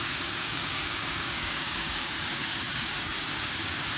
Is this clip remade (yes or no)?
yes